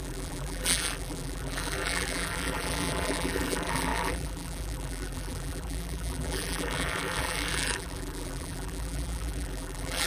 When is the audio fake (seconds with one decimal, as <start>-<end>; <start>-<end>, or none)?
0.0-10.1